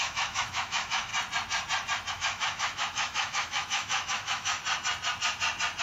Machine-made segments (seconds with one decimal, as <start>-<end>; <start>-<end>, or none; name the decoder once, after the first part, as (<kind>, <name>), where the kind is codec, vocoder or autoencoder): 0.0-1.1 (autoencoder, DAC-VAE); 2.1-4.6